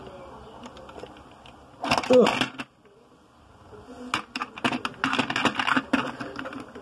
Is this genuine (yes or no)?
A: yes